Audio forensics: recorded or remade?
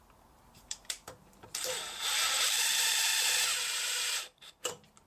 remade